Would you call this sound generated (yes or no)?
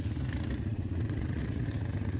yes